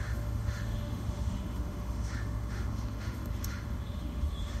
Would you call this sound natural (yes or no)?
no